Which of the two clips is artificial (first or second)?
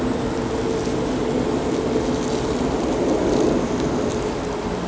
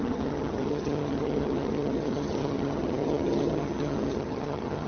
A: second